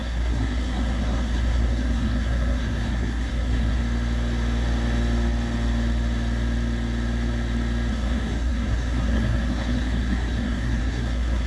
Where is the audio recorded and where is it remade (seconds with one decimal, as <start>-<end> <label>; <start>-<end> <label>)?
0.0-3.8 remade; 3.8-7.9 recorded; 7.9-11.5 remade